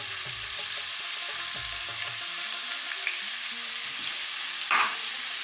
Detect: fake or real fake